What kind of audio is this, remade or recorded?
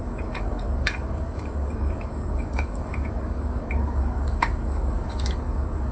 remade